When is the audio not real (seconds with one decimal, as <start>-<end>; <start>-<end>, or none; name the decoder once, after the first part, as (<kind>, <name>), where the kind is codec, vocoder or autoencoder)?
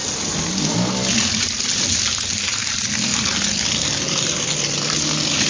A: none